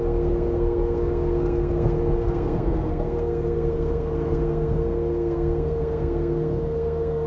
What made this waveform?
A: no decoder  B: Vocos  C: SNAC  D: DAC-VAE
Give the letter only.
C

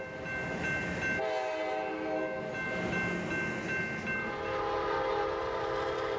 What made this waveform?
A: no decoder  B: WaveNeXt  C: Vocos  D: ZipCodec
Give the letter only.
A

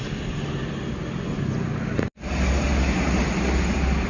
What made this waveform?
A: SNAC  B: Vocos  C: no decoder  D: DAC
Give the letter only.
C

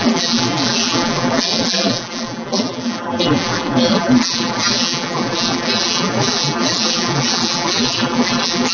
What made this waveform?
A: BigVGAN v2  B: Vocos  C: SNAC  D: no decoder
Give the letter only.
A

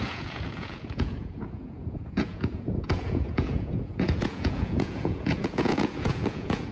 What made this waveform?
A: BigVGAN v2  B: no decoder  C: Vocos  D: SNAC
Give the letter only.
C